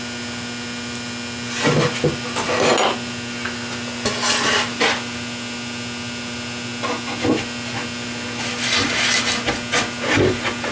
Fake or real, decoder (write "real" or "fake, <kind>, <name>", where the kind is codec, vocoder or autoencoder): real